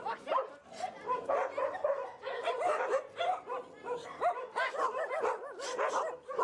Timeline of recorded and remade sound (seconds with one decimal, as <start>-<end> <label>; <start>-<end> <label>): 0.0-6.4 recorded